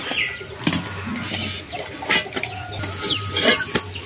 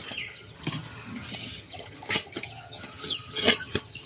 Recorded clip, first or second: first